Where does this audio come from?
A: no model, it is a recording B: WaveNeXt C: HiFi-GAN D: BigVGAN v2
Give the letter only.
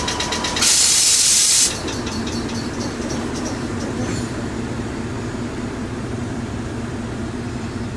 D